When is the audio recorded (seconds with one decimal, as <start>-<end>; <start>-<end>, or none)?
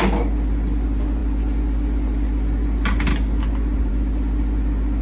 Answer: 0.0-5.0